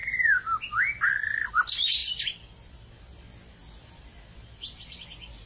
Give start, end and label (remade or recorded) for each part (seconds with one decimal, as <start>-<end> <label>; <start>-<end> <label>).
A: 0.0-2.0 recorded; 2.0-2.9 remade; 2.9-3.6 recorded; 3.6-5.5 remade